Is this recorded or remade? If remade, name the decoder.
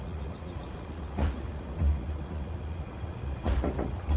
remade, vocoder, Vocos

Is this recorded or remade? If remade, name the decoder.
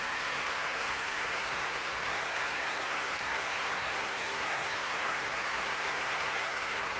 remade, codec, SNAC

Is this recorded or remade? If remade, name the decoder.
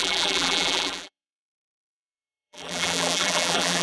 remade, vocoder, BigVGAN v2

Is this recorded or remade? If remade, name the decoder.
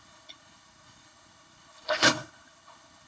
remade, codec, HILCodec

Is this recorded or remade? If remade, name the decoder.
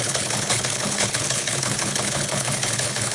remade, codec, HILCodec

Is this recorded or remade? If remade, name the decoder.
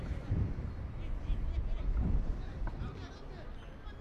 recorded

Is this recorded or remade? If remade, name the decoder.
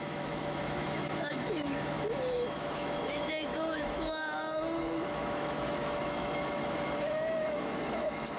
remade, autoencoder, DAC-VAE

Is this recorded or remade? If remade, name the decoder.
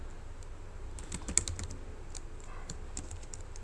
recorded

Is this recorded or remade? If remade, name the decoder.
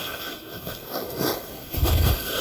remade, codec, SNAC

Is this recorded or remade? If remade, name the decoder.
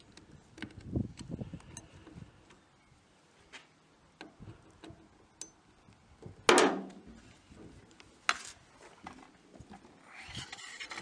recorded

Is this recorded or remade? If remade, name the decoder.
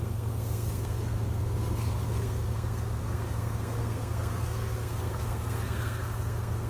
remade, codec, SNAC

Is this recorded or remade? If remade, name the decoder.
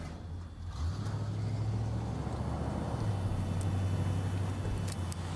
recorded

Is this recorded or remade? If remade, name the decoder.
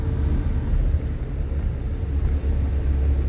recorded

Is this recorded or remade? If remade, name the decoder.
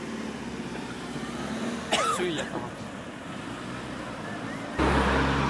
recorded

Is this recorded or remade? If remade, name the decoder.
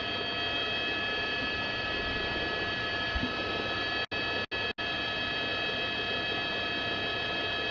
recorded